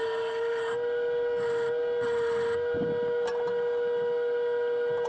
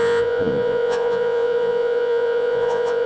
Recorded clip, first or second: first